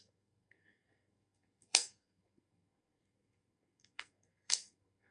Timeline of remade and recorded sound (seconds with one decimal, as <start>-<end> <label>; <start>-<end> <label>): 0.0-5.1 remade

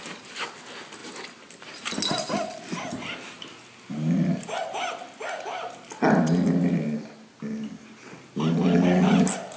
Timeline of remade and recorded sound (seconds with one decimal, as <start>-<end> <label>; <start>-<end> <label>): 0.0-9.6 recorded

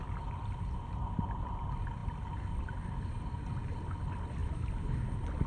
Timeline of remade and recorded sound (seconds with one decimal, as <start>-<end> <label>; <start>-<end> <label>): 0.0-5.5 recorded

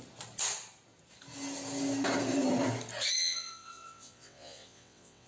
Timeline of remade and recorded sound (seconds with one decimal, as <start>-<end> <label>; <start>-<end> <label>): 0.0-3.2 recorded; 3.2-5.3 remade

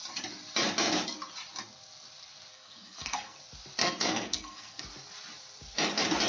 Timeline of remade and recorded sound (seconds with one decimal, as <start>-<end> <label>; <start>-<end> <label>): 0.0-2.5 recorded; 2.5-3.4 remade; 3.4-3.8 recorded; 3.8-4.8 remade; 4.8-6.3 recorded

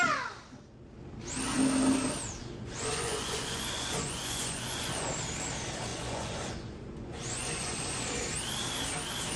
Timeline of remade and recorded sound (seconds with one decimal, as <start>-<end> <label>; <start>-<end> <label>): 0.0-2.4 recorded; 2.4-5.1 remade; 5.1-5.9 recorded; 5.9-8.0 remade; 8.0-9.4 recorded

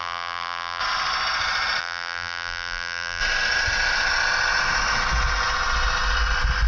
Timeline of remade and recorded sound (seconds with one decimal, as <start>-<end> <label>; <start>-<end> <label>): 0.0-0.8 remade; 0.8-1.8 recorded; 1.8-3.2 remade; 3.2-6.7 recorded